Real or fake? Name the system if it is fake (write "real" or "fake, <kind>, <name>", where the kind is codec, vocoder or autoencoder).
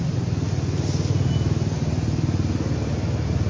real